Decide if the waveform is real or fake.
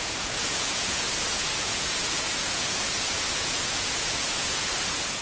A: fake